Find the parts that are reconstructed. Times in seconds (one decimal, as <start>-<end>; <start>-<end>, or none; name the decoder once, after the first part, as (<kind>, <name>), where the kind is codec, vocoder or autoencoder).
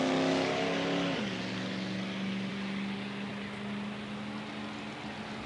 none